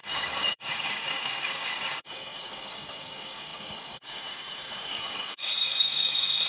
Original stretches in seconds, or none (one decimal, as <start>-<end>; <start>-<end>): none